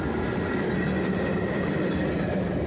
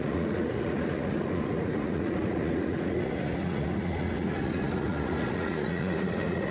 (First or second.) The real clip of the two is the first